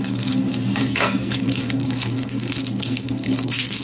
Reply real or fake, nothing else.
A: fake